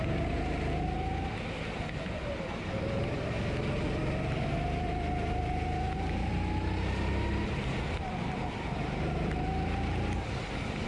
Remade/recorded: recorded